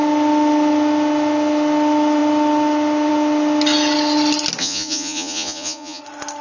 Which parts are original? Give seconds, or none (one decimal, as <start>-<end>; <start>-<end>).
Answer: 0.0-4.6; 6.0-6.4